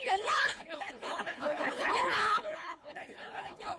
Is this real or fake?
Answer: fake